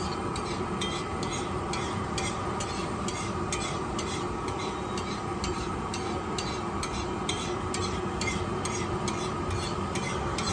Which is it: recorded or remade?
recorded